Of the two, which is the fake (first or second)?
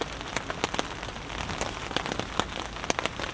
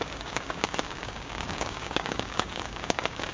second